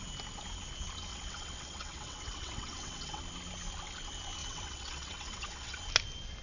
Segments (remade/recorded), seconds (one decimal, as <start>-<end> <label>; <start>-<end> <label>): 0.0-1.1 recorded; 1.1-3.2 remade; 3.2-4.4 recorded; 4.4-5.8 remade; 5.8-6.4 recorded